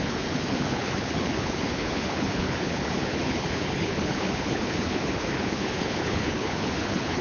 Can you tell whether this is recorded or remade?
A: remade